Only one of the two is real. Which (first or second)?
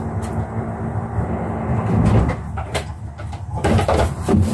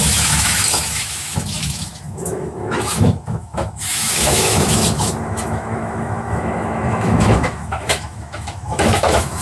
first